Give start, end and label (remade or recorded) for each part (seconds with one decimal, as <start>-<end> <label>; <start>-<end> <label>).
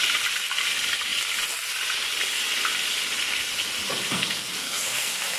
0.0-4.1 recorded; 4.1-5.4 remade